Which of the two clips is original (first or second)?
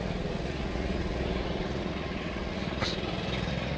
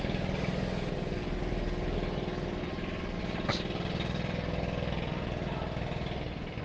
second